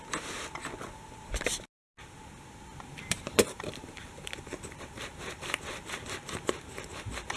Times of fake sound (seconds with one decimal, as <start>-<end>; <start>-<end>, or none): 2.7-5.9